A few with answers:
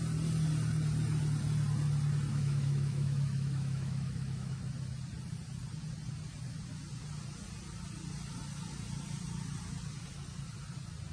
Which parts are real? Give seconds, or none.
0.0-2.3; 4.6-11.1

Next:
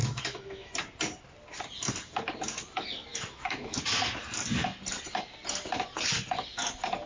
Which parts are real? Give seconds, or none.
0.7-3.1; 3.8-7.1

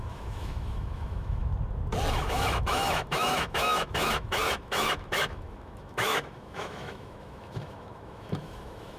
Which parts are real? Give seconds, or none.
1.5-2.1

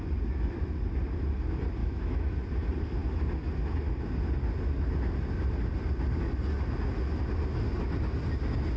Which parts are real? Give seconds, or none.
0.0-1.8; 2.4-8.8

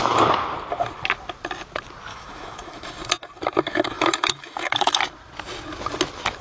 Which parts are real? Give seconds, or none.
0.0-2.1; 3.0-3.7; 5.0-6.4

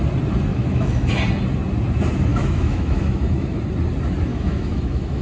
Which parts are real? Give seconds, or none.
0.0-0.5; 1.1-2.3; 3.6-4.3

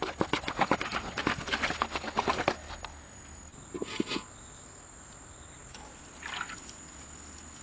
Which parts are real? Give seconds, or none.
0.0-7.6

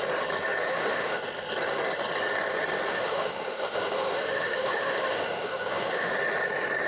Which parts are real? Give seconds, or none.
0.0-0.6; 1.2-2.9; 6.1-6.9